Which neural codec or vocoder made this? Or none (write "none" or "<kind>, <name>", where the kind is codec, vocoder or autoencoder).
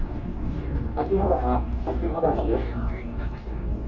codec, DAC